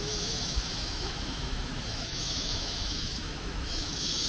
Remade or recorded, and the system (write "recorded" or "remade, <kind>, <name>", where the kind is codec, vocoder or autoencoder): remade, autoencoder, DAC-VAE